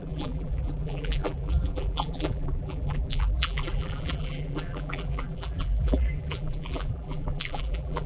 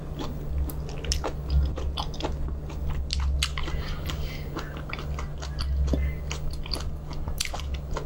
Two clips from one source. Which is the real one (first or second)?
second